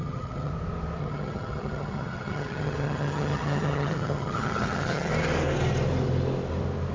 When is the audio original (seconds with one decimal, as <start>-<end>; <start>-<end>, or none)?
0.5-1.0; 5.1-6.9